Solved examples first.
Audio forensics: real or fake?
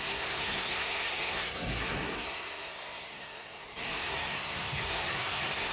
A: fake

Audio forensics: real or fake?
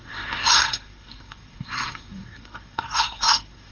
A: fake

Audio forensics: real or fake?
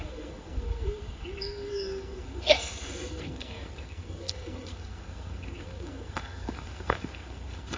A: fake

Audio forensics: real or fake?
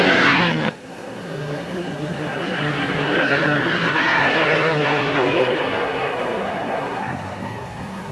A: fake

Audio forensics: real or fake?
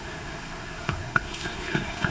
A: fake